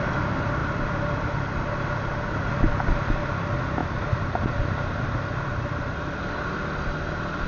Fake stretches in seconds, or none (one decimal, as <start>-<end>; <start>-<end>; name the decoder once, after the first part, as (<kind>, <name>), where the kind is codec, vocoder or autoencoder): 3.8-6.2 (vocoder, BigVGAN v2)